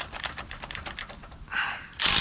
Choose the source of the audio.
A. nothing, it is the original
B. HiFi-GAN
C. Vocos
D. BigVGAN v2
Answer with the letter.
D